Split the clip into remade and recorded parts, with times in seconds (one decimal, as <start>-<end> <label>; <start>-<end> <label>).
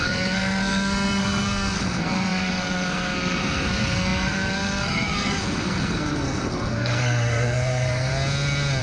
0.0-8.1 remade; 8.1-8.8 recorded